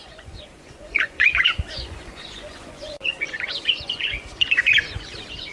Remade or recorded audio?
remade